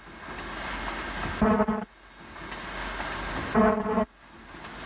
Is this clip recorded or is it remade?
recorded